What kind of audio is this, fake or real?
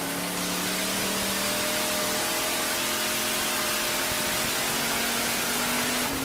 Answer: real